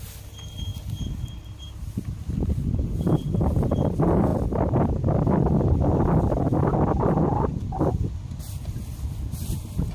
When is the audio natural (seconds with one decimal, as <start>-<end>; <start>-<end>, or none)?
0.0-9.9